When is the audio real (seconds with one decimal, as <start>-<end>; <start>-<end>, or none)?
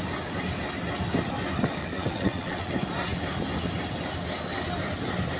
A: 0.0-1.8; 2.7-5.4